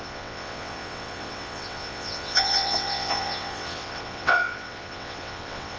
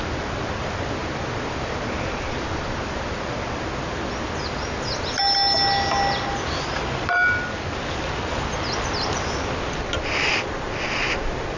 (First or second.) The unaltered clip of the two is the second